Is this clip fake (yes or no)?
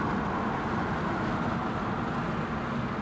no